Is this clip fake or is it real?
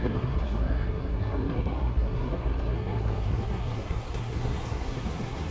fake